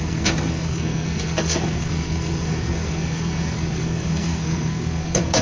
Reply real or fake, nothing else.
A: fake